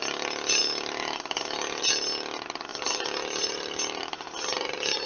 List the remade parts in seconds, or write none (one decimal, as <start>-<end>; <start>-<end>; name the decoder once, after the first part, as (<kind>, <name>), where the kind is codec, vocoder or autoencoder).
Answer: 0.6-1.8 (vocoder, BigVGAN v2); 2.7-4.0